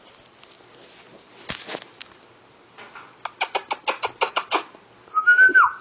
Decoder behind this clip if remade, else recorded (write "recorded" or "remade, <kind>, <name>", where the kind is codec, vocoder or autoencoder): recorded